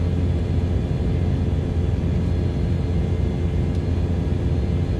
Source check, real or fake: real